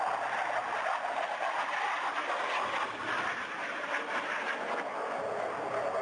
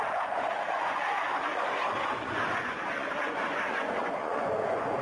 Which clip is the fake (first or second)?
second